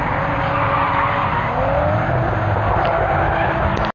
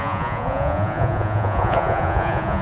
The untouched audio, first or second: first